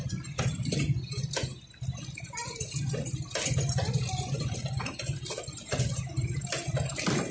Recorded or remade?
recorded